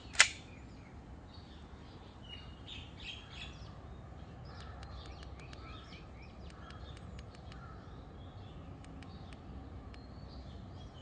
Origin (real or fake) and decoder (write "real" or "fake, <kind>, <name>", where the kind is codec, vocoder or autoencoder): real